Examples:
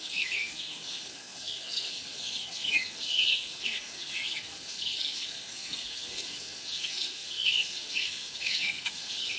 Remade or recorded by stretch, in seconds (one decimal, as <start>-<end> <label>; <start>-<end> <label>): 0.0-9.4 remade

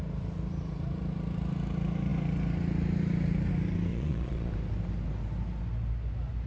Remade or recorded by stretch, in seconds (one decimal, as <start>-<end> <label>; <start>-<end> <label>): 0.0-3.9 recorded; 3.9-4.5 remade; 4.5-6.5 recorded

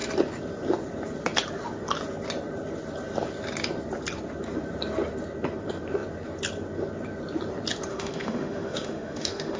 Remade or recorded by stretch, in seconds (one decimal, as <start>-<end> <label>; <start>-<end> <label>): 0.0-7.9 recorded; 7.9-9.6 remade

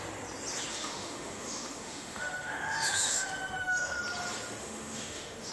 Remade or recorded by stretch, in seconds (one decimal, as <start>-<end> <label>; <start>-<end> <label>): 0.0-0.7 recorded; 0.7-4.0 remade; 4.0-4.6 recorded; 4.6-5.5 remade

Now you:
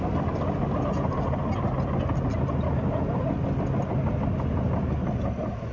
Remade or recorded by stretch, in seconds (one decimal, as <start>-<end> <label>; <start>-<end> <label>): 0.0-5.7 recorded

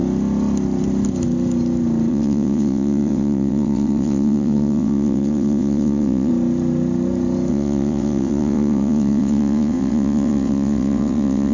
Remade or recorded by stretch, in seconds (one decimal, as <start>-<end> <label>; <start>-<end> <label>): 0.0-2.1 recorded; 2.1-6.3 remade; 6.3-7.5 recorded; 7.5-11.5 remade

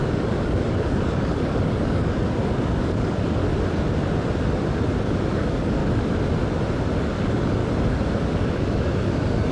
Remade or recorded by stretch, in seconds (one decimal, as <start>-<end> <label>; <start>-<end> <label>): 0.0-3.4 remade; 3.4-5.3 recorded; 5.3-5.8 remade; 5.8-7.0 recorded; 7.0-7.6 remade; 7.6-8.3 recorded; 8.3-9.5 remade

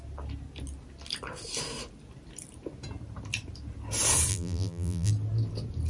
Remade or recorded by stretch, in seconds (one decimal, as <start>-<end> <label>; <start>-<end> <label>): 0.0-4.3 recorded; 4.3-5.1 remade; 5.1-5.9 recorded